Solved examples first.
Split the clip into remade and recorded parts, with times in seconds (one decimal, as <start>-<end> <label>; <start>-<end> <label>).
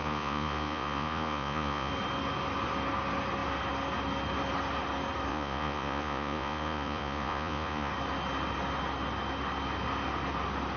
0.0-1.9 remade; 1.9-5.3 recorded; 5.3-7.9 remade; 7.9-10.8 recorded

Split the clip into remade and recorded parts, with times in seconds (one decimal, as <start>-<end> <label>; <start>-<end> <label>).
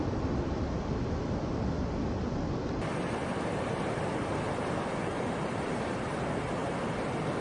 0.0-3.2 recorded; 3.2-4.0 remade; 4.0-7.4 recorded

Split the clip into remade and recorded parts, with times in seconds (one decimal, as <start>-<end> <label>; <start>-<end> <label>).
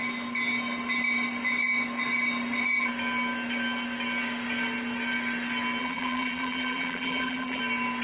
0.0-5.8 recorded; 5.8-7.6 remade; 7.6-8.0 recorded